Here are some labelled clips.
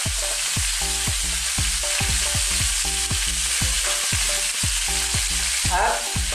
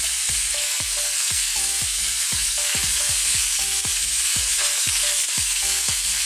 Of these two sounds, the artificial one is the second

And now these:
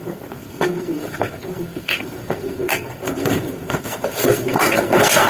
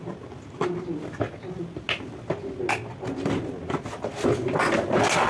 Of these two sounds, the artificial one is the first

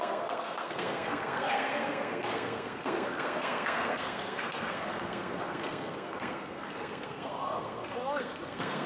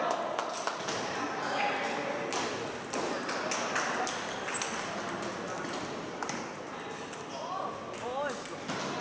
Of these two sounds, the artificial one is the first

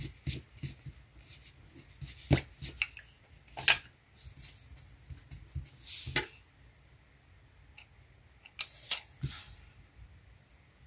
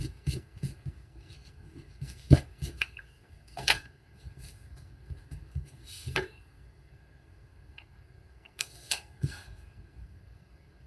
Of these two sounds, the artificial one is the second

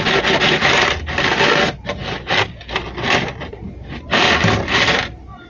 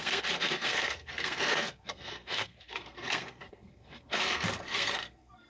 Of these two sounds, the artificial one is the second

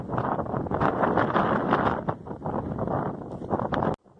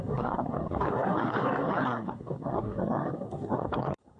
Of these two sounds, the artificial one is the second